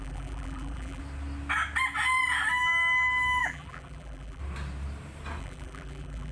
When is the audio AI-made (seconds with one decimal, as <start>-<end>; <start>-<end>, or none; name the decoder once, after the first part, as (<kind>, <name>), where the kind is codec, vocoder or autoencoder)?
0.0-1.0 (vocoder, BigVGAN v2); 3.4-4.4; 5.4-6.3